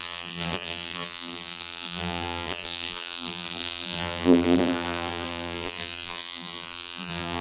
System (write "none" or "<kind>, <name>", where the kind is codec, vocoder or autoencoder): vocoder, BigVGAN v2